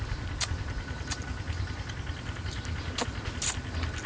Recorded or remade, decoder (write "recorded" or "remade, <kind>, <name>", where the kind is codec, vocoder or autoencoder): recorded